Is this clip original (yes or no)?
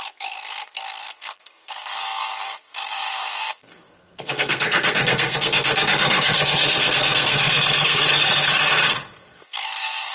no